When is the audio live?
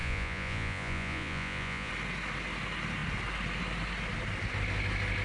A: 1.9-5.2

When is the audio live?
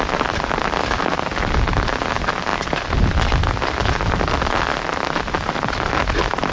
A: 0.0-6.5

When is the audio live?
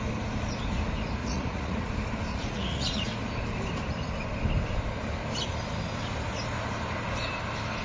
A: 0.0-1.2; 1.9-2.3; 3.1-7.8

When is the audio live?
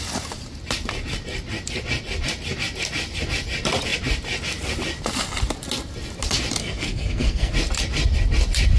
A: 0.0-6.6; 7.5-8.8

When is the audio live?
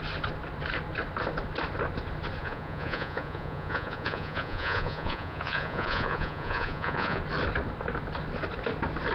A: 0.0-2.4; 7.2-9.1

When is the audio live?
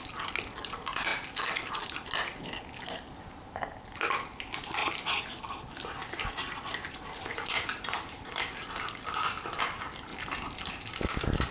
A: 0.0-11.5